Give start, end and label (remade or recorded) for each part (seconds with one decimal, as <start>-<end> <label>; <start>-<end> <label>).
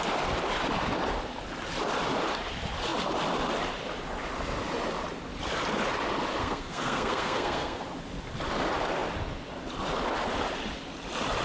0.0-6.4 recorded; 6.4-7.8 remade; 7.8-11.4 recorded